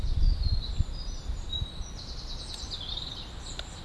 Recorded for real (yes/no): yes